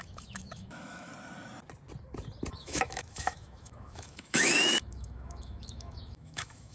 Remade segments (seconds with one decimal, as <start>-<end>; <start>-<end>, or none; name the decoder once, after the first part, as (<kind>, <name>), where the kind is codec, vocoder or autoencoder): 0.0-1.1 (autoencoder, DAC-VAE); 2.5-6.7